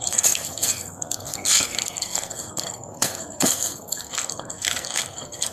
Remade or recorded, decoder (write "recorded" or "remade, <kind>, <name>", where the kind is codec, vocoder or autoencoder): remade, codec, SNAC